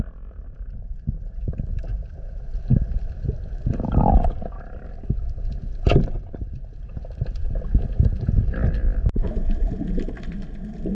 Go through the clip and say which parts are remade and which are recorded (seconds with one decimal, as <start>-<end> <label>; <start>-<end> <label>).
0.0-10.9 recorded